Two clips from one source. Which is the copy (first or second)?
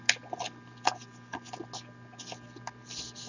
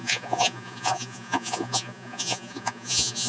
second